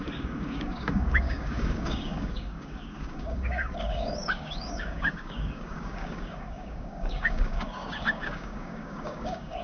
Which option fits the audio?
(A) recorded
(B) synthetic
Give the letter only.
B